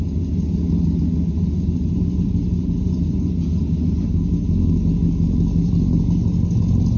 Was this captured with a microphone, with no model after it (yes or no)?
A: yes